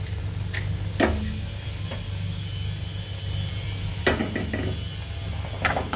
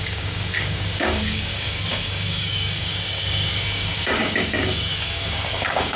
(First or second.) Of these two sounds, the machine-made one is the second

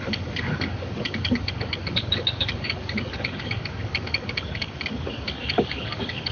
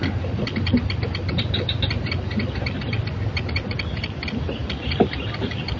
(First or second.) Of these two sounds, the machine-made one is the first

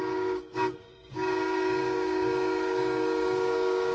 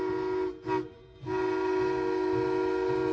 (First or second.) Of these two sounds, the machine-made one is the first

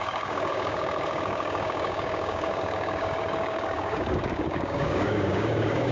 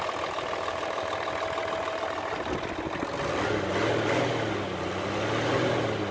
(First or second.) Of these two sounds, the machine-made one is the first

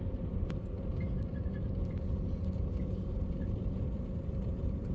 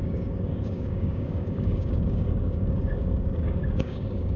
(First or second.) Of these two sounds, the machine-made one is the second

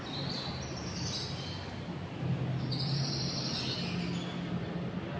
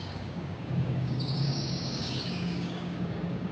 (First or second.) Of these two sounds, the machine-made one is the second